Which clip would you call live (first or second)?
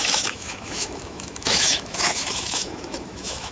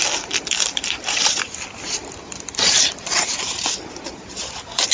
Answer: second